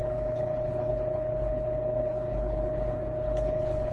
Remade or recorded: remade